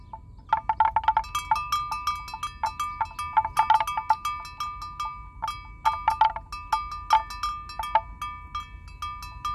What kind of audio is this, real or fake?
real